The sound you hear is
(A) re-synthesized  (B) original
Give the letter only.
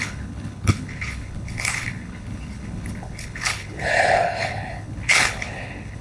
A